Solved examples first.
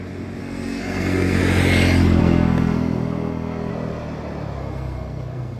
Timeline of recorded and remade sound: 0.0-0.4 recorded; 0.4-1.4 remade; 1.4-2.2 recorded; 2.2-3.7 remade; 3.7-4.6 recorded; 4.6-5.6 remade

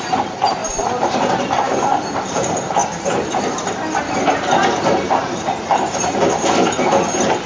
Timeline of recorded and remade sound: 0.0-2.8 remade; 2.8-3.4 recorded; 3.4-7.5 remade

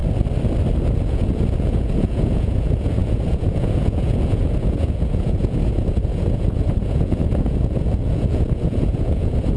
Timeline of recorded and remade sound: 0.0-0.8 recorded; 0.8-9.6 remade

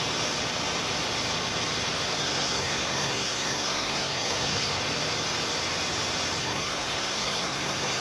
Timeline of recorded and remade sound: 0.0-2.2 recorded; 2.2-4.8 remade; 4.8-6.4 recorded; 6.4-8.0 remade

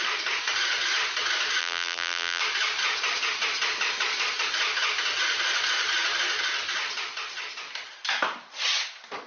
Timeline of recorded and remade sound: 0.0-1.6 recorded; 1.6-2.4 remade; 2.4-9.3 recorded

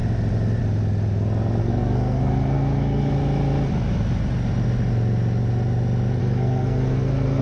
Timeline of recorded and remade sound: 0.0-1.6 recorded; 1.6-3.1 remade; 3.1-6.2 recorded; 6.2-7.4 remade